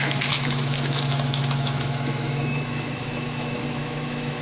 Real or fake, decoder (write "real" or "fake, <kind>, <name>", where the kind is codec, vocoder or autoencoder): fake, autoencoder, DAC-VAE